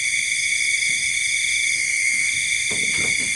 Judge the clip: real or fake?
real